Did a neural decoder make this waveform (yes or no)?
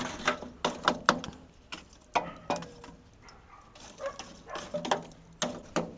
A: no